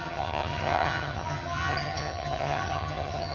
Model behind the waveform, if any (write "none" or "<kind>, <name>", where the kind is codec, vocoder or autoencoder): vocoder, HiFi-GAN